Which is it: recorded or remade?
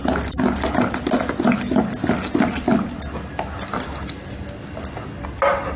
recorded